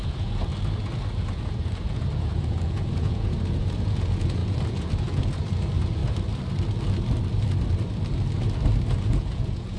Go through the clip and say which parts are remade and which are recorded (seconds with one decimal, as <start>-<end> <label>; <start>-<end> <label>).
0.0-0.5 remade; 0.5-1.2 recorded; 1.2-6.0 remade; 6.0-9.0 recorded; 9.0-9.8 remade